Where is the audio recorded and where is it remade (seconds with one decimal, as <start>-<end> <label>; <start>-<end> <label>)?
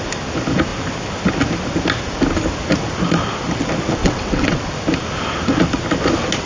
0.0-4.0 recorded; 4.0-4.6 remade; 4.6-6.5 recorded